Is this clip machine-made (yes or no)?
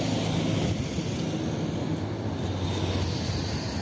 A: no